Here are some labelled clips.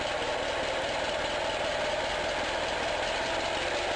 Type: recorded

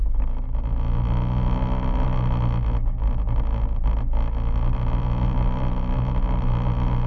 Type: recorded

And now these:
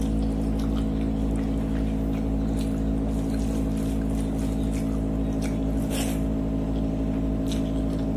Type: recorded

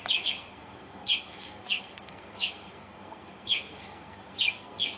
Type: remade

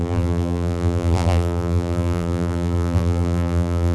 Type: remade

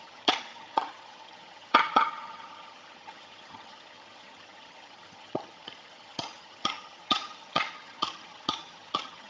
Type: remade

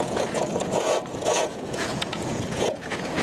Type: remade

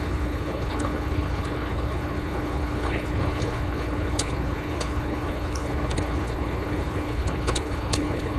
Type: remade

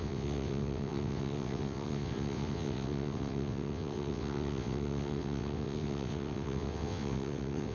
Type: remade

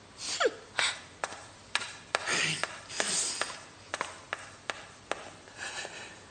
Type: recorded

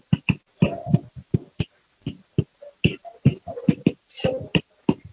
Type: recorded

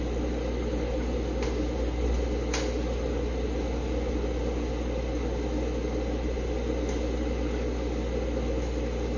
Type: recorded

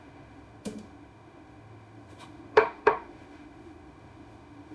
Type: remade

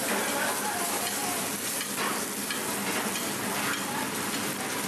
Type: recorded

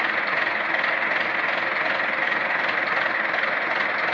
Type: recorded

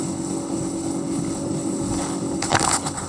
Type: remade